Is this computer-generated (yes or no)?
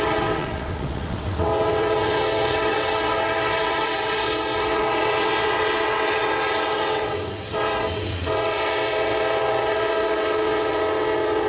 yes